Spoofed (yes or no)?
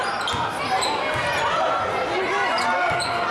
no